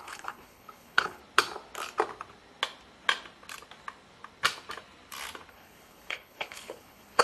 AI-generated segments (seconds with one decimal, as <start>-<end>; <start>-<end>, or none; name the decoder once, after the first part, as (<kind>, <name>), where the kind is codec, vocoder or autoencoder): 0.0-1.2 (codec, HILCodec); 5.5-7.2